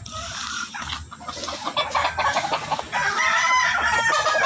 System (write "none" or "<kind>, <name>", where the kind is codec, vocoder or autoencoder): vocoder, BigVGAN v2